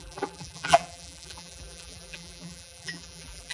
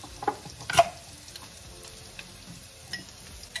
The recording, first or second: second